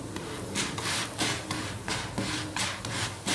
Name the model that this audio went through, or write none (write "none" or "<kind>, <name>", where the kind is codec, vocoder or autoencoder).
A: none